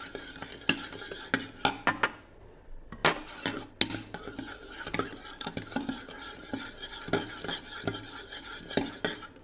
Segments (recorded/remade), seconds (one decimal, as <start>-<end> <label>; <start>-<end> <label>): 0.0-9.4 recorded